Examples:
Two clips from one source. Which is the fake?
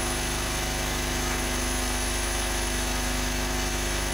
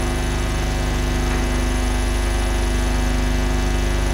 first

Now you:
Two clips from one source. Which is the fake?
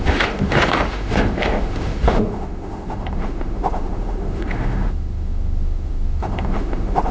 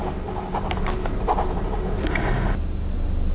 first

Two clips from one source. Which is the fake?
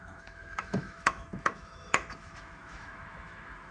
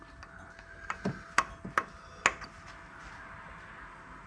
first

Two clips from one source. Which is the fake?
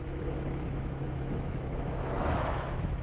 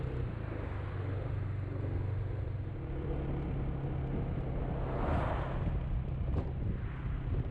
first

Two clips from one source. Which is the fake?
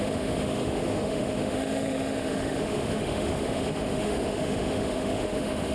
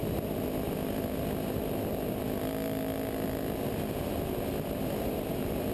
first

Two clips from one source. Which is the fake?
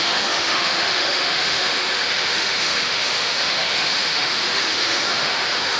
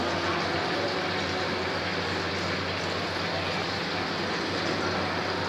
first